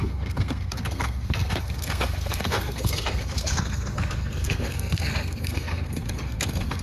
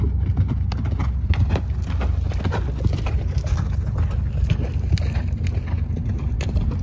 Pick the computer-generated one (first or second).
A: first